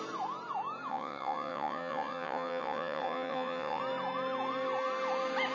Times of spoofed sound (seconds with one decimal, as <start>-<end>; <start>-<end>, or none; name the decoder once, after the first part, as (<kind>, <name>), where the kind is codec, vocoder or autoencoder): 0.9-3.8 (vocoder, WaveNeXt)

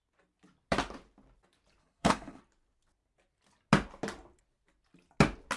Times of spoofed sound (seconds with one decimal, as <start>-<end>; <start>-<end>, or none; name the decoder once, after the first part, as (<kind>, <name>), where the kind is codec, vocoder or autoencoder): 1.8-2.4 (codec, HILCodec)

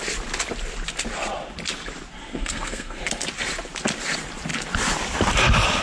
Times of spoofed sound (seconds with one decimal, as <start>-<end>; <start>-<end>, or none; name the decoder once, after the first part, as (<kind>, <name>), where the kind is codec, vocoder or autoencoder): 2.3-3.0 (codec, SNAC)

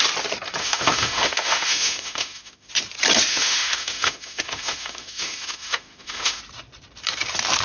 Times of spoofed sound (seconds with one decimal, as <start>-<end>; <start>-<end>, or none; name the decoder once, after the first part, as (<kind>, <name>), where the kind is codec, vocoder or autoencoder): 0.6-2.7 (autoencoder, DAC-VAE); 3.3-6.4

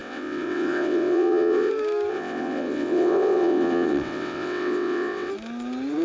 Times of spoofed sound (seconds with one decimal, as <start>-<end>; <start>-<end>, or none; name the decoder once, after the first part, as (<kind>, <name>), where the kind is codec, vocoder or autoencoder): 0.0-1.7 (vocoder, WaveNeXt); 2.1-5.3

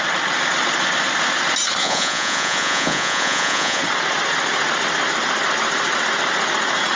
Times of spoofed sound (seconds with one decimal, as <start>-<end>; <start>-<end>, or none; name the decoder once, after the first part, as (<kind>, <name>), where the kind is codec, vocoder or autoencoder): 1.8-3.8 (vocoder, Vocos)

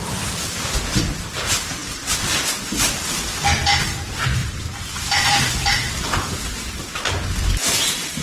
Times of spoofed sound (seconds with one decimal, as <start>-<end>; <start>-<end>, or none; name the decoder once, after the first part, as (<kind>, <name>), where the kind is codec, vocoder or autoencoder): 4.4-6.4 (vocoder, BigVGAN v2)

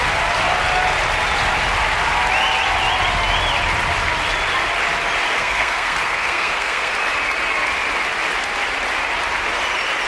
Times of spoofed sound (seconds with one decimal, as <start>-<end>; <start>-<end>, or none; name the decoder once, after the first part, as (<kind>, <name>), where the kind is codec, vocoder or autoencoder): 5.3-6.9 (codec, SNAC)